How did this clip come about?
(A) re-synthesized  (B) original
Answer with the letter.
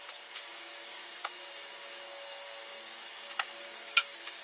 A